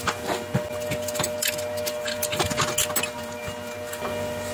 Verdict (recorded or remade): recorded